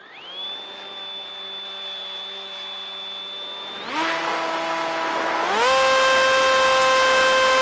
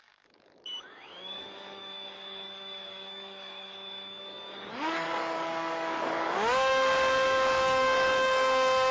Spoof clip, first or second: second